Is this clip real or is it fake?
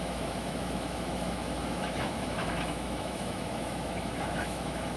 fake